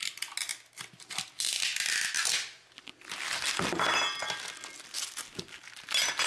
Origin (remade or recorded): recorded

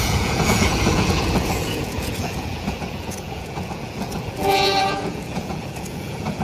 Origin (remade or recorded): remade